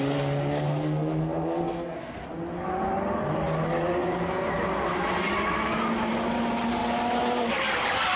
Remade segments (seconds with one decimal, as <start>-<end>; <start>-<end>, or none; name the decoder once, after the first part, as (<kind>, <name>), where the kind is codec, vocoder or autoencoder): 0.7-2.2 (codec, SNAC)